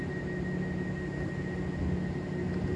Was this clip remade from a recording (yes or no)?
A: no